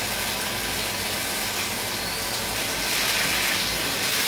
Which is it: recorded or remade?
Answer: recorded